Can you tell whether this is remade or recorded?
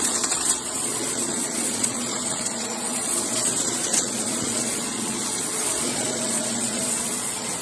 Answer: remade